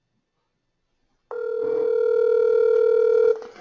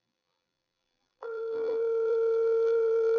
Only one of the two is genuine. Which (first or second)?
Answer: first